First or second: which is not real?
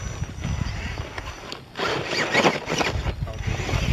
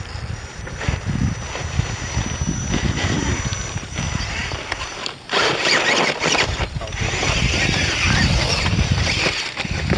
second